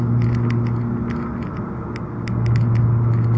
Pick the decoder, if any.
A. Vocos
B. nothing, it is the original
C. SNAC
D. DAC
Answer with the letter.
B